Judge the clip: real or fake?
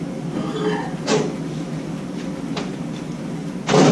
real